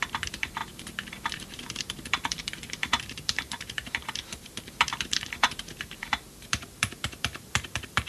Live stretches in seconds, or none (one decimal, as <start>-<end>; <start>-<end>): none